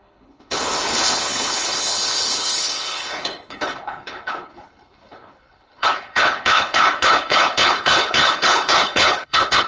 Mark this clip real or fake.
fake